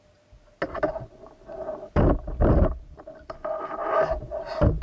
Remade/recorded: recorded